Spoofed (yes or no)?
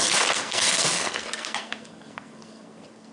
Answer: yes